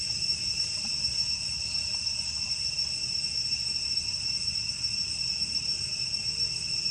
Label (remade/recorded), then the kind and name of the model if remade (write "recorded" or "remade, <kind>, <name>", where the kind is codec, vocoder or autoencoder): recorded